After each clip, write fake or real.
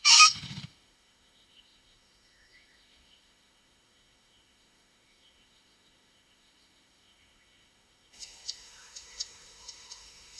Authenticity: fake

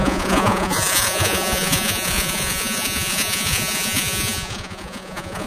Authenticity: fake